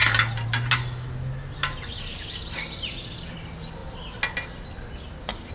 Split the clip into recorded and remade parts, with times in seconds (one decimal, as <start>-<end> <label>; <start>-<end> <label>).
0.0-5.5 recorded